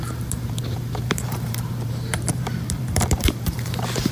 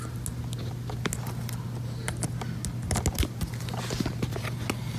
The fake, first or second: first